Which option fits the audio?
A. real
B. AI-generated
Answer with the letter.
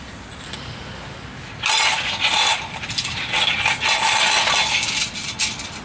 A